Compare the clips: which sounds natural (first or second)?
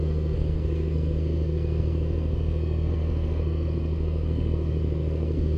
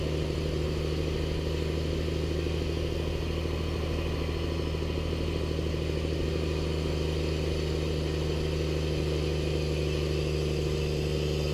second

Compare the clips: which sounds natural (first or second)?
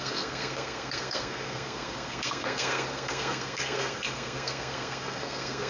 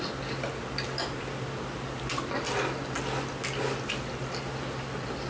second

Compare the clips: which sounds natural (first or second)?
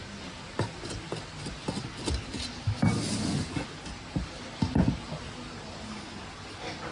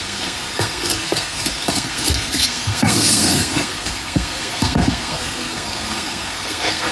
first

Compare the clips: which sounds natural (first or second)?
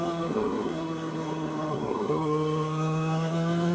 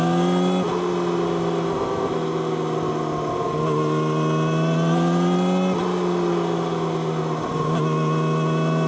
second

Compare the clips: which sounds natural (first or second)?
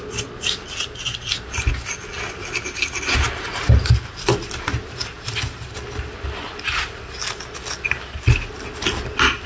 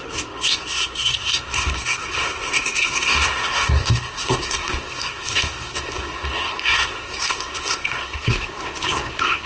first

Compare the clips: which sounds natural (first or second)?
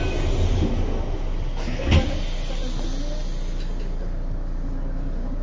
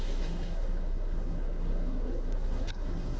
first